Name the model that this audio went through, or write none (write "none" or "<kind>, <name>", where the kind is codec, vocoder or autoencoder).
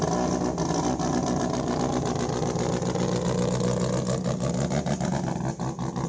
none